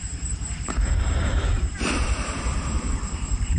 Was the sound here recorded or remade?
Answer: remade